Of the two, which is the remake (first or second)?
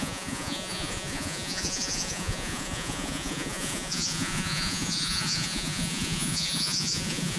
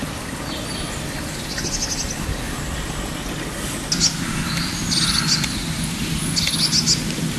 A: first